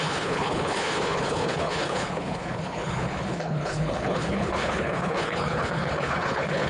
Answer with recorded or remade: remade